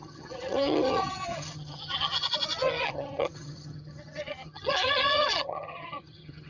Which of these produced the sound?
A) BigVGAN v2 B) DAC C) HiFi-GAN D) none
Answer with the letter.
C